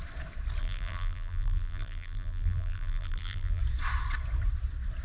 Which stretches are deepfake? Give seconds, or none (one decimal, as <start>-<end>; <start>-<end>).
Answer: 0.6-3.6